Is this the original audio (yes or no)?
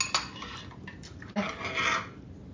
yes